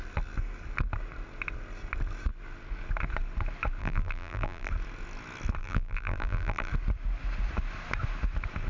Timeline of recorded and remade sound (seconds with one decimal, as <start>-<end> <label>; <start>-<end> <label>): 0.0-3.8 recorded; 3.8-4.7 remade; 4.7-5.6 recorded; 5.6-6.7 remade; 6.7-8.7 recorded